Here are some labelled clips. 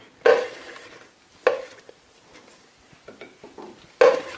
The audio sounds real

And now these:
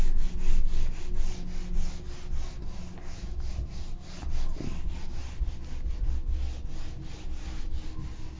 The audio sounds real